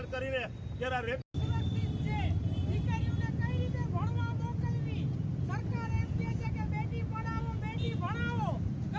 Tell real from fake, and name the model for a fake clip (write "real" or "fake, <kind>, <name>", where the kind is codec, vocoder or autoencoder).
real